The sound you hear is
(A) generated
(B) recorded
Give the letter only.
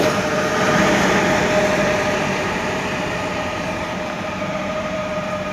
A